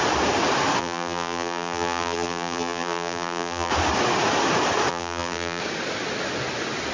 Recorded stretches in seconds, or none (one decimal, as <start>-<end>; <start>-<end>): 0.0-0.8; 3.7-4.9; 5.6-6.9